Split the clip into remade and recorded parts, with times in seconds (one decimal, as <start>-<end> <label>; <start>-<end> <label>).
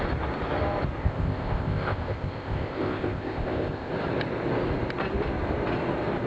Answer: 0.0-1.0 recorded; 1.0-3.9 remade; 3.9-6.3 recorded